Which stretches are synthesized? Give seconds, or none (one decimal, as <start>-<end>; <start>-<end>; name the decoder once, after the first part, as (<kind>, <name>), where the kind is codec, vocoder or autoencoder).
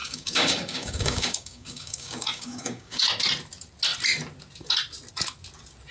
0.0-3.0 (codec, DAC)